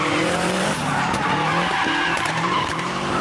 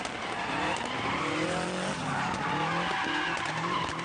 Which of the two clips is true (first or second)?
second